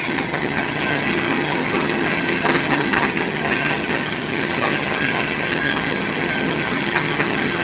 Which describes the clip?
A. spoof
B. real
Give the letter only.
A